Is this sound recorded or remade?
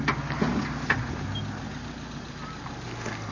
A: recorded